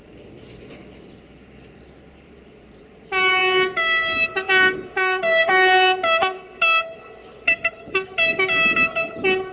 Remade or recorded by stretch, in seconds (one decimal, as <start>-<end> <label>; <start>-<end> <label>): 0.0-9.5 recorded